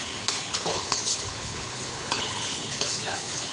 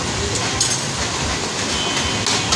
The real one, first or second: second